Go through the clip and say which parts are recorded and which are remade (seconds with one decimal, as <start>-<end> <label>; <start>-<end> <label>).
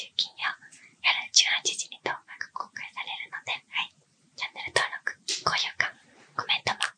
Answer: 0.0-0.4 recorded; 0.4-1.0 remade; 1.0-7.0 recorded